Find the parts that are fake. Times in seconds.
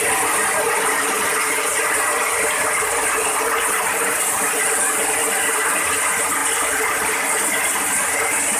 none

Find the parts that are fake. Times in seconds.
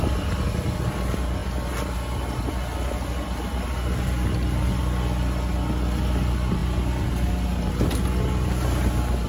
none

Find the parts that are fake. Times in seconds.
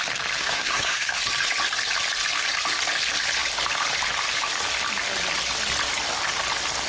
0.4-1.2 (codec, SNAC)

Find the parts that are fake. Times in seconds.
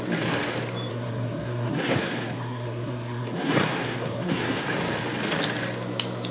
0.9-4.7 (codec, SNAC)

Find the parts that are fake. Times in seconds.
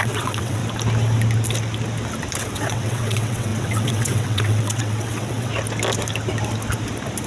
0.0-0.6 (vocoder, WaveNeXt); 2.4-5.5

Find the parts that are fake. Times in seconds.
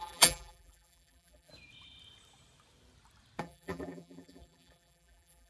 0.0-1.5 (vocoder, BigVGAN v2); 3.4-5.5